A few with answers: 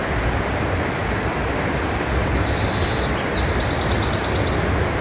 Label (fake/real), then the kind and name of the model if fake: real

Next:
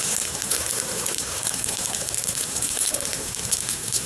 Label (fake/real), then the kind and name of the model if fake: fake, codec, SNAC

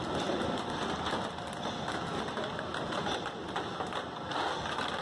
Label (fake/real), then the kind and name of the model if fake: real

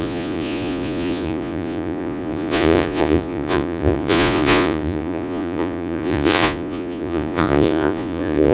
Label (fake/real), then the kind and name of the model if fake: fake, vocoder, Vocos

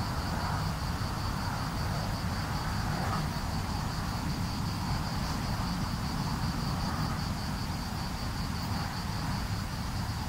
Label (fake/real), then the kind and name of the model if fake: real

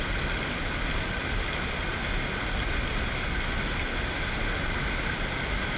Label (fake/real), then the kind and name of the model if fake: real